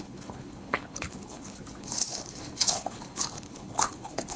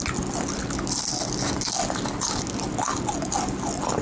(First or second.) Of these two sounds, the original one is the second